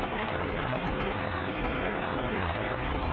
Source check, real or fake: fake